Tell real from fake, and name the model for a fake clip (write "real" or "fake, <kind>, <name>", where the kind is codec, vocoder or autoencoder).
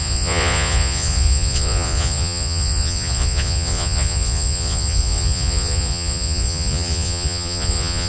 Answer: fake, vocoder, Vocos